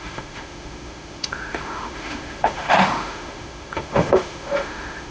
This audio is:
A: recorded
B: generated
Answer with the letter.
B